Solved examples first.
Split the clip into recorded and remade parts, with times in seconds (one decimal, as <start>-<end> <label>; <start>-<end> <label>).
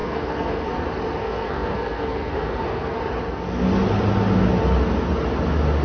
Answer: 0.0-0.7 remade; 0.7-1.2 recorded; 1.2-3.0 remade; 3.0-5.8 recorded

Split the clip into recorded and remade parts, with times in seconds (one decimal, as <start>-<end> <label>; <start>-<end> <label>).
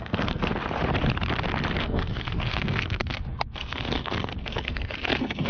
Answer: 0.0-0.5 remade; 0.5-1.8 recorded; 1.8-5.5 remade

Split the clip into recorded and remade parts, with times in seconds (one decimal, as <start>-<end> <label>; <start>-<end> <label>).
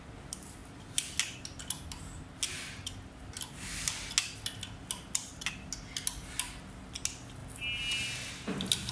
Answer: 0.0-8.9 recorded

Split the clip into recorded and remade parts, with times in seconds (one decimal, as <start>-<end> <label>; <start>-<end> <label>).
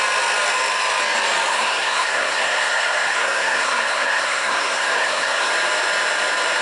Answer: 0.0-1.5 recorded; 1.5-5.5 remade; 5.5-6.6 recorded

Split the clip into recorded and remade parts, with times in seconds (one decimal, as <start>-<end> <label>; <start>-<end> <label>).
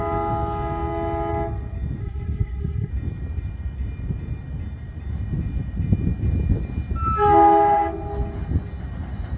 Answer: 0.0-2.0 recorded; 2.0-2.9 remade; 2.9-9.4 recorded